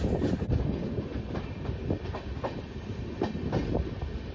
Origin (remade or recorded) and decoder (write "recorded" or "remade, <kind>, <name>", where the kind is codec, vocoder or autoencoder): recorded